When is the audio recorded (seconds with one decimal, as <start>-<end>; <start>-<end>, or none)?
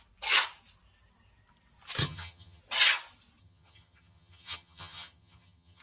0.0-2.0; 2.6-3.4